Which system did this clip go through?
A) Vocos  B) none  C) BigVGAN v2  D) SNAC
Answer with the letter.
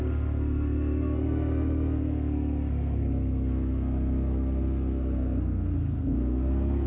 D